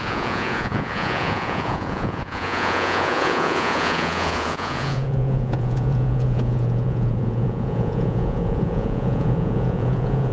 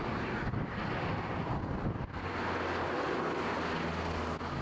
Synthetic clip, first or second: first